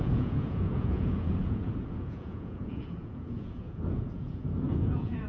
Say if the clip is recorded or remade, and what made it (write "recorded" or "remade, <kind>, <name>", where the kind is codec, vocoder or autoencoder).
remade, vocoder, Vocos